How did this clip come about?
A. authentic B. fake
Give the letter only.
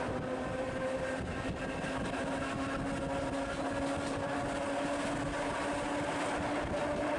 A